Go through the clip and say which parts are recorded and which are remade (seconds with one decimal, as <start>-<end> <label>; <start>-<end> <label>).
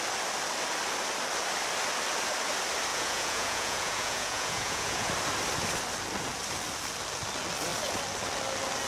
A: 0.0-2.9 recorded; 2.9-5.1 remade; 5.1-8.9 recorded